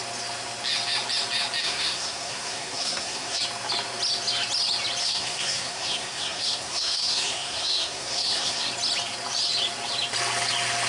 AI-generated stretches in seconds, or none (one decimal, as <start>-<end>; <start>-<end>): 1.6-3.4; 5.0-8.7